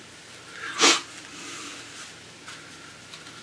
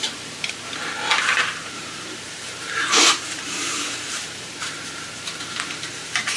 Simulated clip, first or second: second